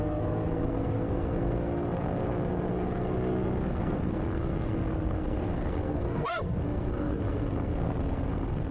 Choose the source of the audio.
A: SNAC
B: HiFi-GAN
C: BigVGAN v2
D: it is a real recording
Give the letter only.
A